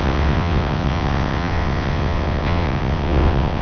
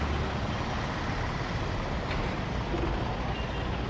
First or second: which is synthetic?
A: first